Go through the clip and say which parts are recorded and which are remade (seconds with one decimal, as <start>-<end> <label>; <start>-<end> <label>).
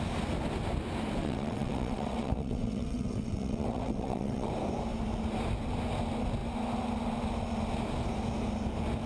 0.0-1.2 recorded; 1.2-4.5 remade; 4.5-9.1 recorded